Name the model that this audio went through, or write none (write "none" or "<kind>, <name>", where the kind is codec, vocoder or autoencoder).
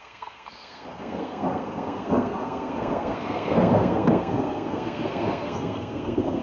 codec, SNAC